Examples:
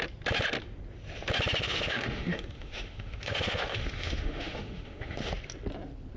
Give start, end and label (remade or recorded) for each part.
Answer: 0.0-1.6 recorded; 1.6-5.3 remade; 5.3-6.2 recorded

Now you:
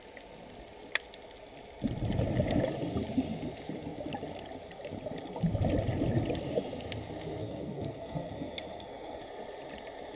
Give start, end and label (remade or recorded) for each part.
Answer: 0.0-7.4 recorded; 7.4-9.2 remade; 9.2-10.2 recorded

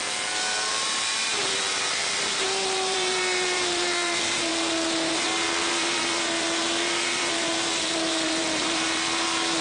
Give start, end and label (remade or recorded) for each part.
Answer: 0.0-0.7 recorded; 0.7-9.6 remade

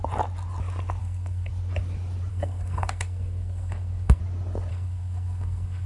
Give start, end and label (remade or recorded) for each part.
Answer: 0.0-1.0 recorded; 1.0-1.5 remade; 1.5-2.3 recorded; 2.3-4.2 remade; 4.2-4.7 recorded; 4.7-5.9 remade

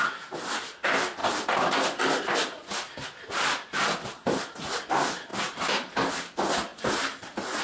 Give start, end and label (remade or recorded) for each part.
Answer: 0.0-5.3 recorded; 5.3-5.9 remade; 5.9-6.7 recorded; 6.7-7.6 remade

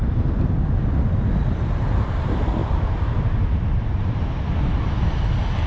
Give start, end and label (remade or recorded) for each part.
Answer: 0.0-2.6 recorded; 2.6-4.2 remade; 4.2-5.7 recorded

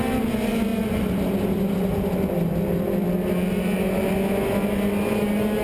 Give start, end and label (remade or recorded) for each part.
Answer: 0.0-5.6 recorded

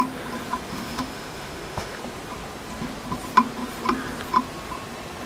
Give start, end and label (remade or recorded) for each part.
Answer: 0.0-0.7 recorded; 0.7-2.0 remade; 2.0-5.3 recorded